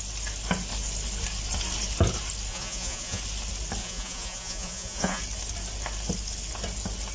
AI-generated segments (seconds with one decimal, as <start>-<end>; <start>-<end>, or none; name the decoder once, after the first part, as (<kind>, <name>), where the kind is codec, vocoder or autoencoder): 2.5-3.2 (vocoder, Vocos); 3.8-5.2